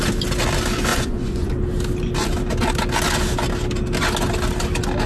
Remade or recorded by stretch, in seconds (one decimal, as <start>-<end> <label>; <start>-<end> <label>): 0.0-0.9 recorded; 0.9-1.5 remade; 1.5-5.1 recorded